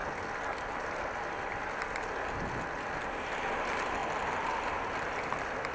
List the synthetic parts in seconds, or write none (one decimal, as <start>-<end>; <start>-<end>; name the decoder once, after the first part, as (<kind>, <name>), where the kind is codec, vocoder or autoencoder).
none